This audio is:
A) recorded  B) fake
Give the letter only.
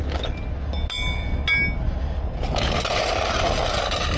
A